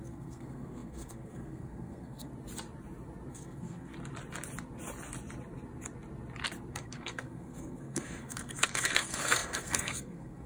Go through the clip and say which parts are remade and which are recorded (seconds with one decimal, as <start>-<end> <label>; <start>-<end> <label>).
0.0-2.3 remade; 2.3-3.3 recorded; 3.3-3.9 remade; 3.9-6.7 recorded; 6.7-10.5 remade